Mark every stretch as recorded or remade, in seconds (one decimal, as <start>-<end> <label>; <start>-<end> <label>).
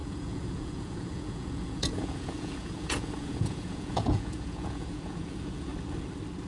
0.0-5.7 remade; 5.7-6.5 recorded